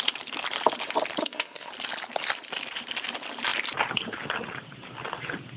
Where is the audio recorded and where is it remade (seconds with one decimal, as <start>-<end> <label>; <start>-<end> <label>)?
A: 0.0-1.2 recorded; 1.2-1.7 remade; 1.7-5.6 recorded